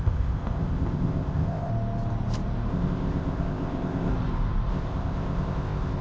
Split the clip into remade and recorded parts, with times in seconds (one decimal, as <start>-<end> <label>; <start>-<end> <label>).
0.0-1.7 remade; 1.7-2.7 recorded; 2.7-4.1 remade; 4.1-4.7 recorded; 4.7-6.0 remade